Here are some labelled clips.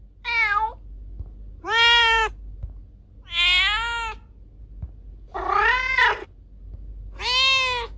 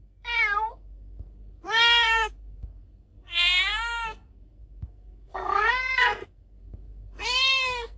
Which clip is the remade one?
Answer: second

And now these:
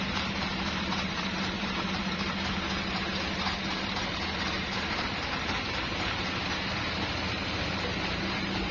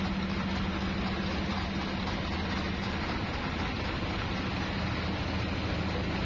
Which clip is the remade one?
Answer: first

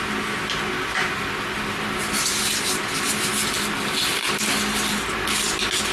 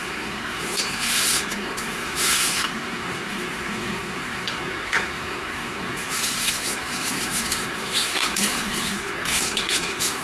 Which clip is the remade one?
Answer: second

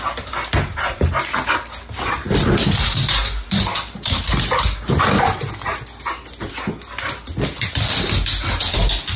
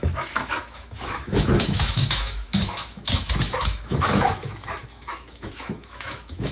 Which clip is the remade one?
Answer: second